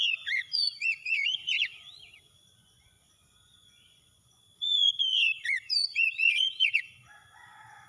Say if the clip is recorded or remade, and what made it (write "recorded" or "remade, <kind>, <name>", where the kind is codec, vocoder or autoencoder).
remade, vocoder, Vocos